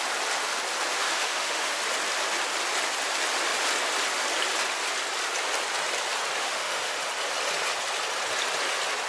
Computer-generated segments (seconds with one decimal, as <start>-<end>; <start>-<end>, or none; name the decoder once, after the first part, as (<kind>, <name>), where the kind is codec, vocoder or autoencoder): 0.9-1.8 (autoencoder, DAC-VAE); 6.4-6.9